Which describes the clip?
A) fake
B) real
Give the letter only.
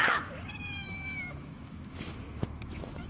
A